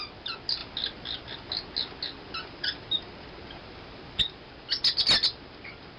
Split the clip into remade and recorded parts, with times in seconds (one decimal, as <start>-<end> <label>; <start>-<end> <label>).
0.0-6.0 recorded